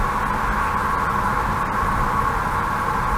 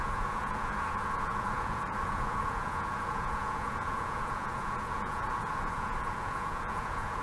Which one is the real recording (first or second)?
first